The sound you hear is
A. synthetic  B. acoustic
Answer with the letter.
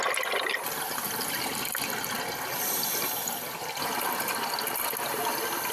B